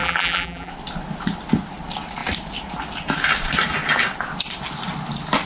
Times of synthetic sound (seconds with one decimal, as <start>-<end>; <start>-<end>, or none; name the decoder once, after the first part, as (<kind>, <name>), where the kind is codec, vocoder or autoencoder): 0.0-0.7 (vocoder, BigVGAN v2)